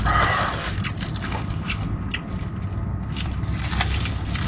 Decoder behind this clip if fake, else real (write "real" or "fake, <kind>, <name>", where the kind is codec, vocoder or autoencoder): real